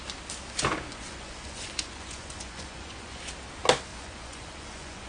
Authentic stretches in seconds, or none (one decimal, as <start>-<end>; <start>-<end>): 0.0-0.9; 3.2-3.9